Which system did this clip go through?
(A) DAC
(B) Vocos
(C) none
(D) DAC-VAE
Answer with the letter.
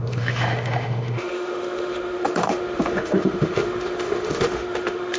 D